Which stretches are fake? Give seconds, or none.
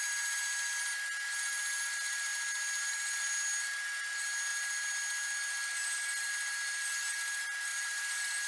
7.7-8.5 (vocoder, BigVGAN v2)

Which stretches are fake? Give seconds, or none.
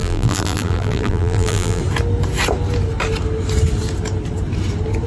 0.0-1.8 (vocoder, BigVGAN v2)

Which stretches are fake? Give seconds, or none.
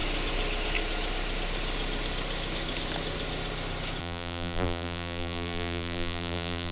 4.0-6.7 (vocoder, BigVGAN v2)